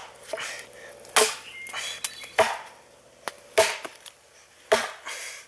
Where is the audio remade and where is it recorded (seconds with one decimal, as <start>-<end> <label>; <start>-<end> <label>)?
0.0-5.5 recorded